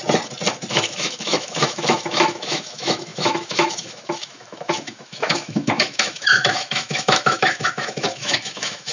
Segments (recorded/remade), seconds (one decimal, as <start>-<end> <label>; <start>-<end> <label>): 0.0-0.7 recorded; 0.7-8.9 remade